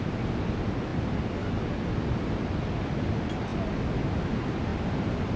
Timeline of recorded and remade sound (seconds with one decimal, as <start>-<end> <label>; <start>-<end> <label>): 0.0-5.4 recorded